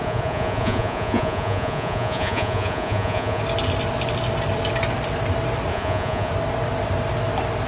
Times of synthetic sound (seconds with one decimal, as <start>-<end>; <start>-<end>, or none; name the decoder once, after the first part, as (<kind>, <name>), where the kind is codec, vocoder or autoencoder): 0.0-3.4 (vocoder, Vocos); 5.7-6.3